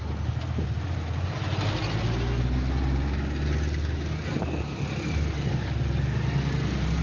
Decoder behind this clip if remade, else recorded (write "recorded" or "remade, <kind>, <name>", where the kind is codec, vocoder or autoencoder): recorded